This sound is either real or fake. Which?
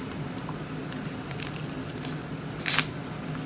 real